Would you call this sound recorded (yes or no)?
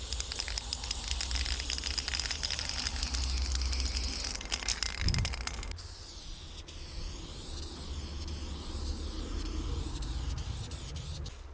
yes